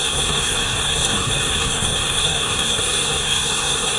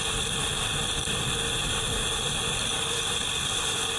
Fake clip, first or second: first